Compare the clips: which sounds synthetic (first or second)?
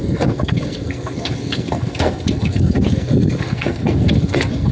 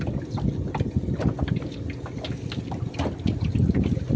first